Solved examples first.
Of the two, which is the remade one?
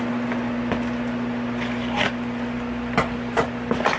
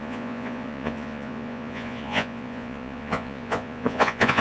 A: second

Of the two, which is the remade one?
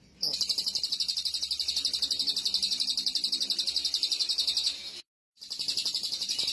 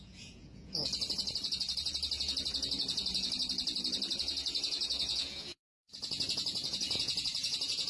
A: second